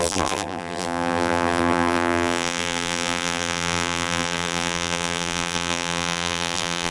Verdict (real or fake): fake